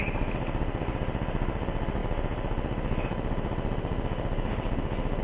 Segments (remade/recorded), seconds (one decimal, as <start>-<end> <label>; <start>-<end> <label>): 0.0-5.2 recorded